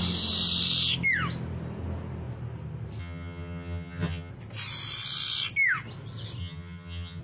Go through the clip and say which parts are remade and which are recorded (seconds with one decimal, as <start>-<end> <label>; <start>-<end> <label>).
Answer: 0.0-3.0 recorded; 3.0-4.3 remade; 4.3-6.4 recorded; 6.4-7.2 remade